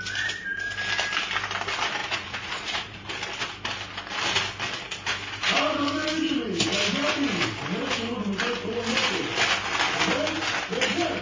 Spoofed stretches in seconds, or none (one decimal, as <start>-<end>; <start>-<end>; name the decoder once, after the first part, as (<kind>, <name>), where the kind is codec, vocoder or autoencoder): 2.0-3.1 (vocoder, Vocos)

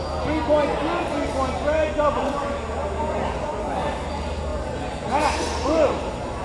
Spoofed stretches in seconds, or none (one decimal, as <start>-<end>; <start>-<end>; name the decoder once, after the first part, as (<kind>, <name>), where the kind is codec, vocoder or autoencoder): none

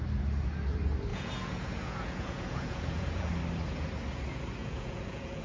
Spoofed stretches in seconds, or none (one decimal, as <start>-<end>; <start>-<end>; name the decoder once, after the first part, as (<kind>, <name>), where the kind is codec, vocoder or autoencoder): 1.1-3.3 (vocoder, Vocos); 4.6-5.4